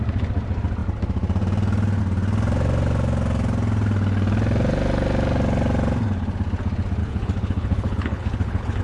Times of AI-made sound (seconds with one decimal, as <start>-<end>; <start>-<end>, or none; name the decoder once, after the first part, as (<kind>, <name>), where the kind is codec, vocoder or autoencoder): 7.0-8.8 (codec, HILCodec)